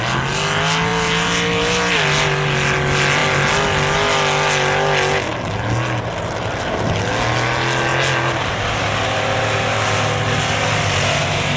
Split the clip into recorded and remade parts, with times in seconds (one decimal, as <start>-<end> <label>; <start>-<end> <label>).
0.0-11.6 recorded